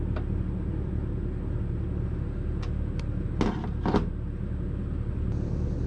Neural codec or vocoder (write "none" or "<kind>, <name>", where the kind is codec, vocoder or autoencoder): none